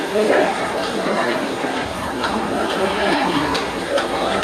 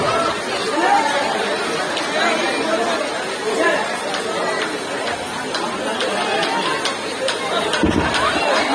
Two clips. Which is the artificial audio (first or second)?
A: first